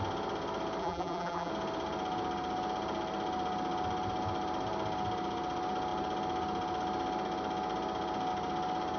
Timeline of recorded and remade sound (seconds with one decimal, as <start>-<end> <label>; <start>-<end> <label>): 0.0-0.8 recorded; 0.8-1.5 remade; 1.5-9.0 recorded